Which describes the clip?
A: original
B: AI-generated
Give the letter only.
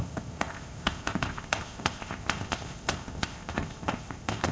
B